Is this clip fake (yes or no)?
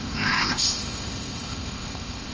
yes